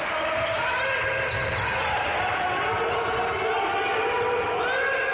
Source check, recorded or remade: recorded